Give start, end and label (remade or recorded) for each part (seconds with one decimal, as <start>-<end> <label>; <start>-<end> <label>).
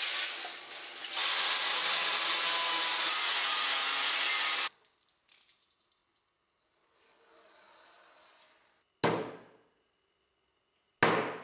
0.0-2.9 recorded; 2.9-4.2 remade; 4.2-11.4 recorded